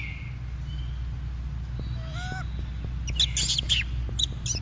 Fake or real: real